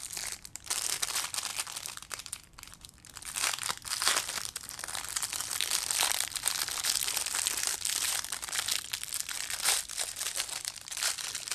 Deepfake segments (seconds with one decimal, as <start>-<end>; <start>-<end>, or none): 0.0-1.5; 2.7-11.5